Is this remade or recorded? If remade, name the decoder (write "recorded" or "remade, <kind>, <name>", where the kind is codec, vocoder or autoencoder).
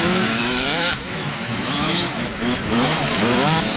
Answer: remade, autoencoder, DAC-VAE